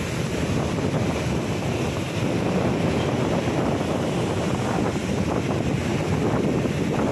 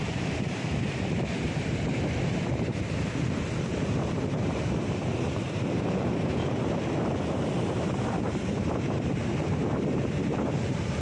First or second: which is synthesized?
second